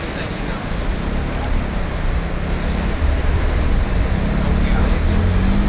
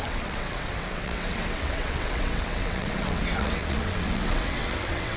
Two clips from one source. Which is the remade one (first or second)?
second